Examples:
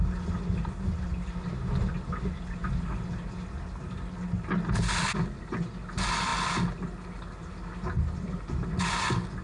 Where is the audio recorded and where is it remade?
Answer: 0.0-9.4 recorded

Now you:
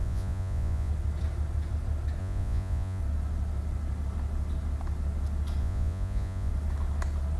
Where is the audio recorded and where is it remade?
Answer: 0.0-0.9 remade; 0.9-2.2 recorded; 2.2-3.0 remade; 3.0-5.6 recorded; 5.6-6.5 remade; 6.5-7.4 recorded

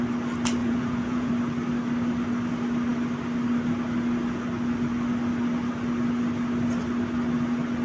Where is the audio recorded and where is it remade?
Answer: 0.0-0.6 recorded; 0.6-1.3 remade; 1.3-7.8 recorded

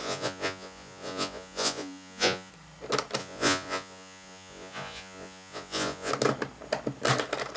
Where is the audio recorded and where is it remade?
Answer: 0.0-2.5 remade; 2.5-3.2 recorded; 3.2-6.1 remade; 6.1-7.6 recorded